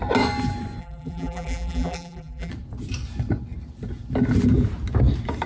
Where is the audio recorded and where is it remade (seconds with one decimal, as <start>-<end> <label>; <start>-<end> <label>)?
0.0-0.8 recorded; 0.8-2.5 remade; 2.5-5.5 recorded